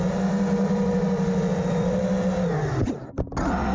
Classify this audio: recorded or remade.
recorded